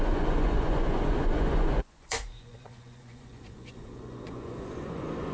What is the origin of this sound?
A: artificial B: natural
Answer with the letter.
A